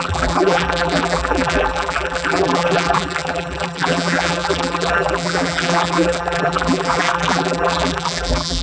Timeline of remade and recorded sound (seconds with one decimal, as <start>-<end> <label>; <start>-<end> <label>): 0.0-8.6 remade